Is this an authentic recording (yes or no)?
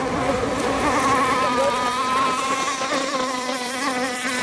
no